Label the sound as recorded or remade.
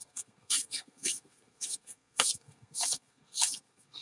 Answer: remade